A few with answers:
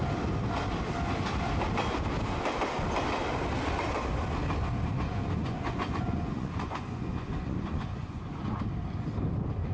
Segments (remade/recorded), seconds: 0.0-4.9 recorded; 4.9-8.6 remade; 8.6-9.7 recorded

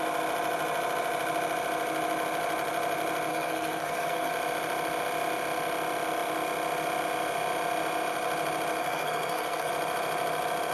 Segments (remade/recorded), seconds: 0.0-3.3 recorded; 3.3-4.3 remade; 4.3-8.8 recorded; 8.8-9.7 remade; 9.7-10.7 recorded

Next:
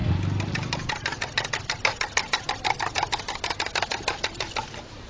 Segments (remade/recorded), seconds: 0.0-5.1 recorded

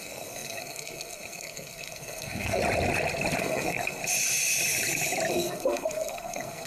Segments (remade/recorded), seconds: 0.0-2.6 remade; 2.6-3.4 recorded; 3.4-4.0 remade; 4.0-5.3 recorded; 5.3-6.7 remade

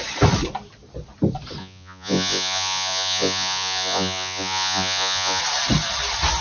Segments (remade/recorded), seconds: 0.0-1.6 recorded; 1.6-5.4 remade; 5.4-6.4 recorded

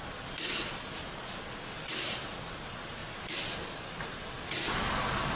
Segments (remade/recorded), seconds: 0.0-5.4 recorded

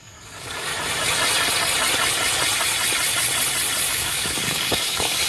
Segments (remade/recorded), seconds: 0.0-0.7 remade; 0.7-3.9 recorded; 3.9-5.3 remade